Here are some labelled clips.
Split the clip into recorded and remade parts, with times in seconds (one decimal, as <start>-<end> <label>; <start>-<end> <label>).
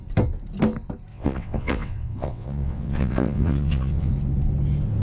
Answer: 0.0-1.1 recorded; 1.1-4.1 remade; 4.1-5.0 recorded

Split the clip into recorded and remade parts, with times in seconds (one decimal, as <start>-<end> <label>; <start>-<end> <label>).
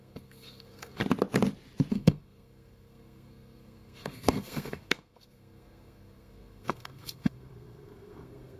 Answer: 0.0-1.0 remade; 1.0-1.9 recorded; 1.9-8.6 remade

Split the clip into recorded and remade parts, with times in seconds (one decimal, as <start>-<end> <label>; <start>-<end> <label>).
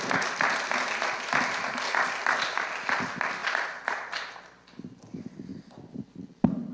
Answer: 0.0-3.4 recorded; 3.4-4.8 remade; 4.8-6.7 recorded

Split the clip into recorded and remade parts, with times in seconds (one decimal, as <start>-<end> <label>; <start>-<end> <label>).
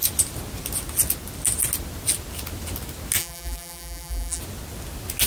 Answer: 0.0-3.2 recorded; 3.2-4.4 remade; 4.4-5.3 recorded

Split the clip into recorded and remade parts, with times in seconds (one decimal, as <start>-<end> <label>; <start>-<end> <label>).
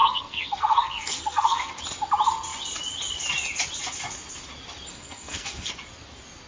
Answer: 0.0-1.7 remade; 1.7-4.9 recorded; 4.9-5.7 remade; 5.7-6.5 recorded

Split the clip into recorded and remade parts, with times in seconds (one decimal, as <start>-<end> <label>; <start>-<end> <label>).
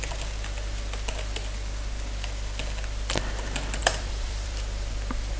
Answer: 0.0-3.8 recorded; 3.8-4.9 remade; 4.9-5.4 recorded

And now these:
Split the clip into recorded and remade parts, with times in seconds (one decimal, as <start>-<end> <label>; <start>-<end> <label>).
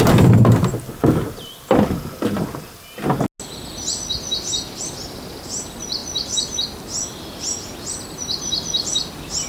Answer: 0.0-9.5 recorded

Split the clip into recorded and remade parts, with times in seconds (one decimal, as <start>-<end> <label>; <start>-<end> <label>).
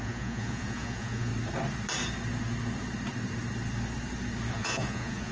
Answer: 0.0-1.3 remade; 1.3-4.5 recorded; 4.5-5.3 remade